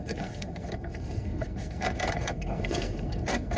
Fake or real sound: fake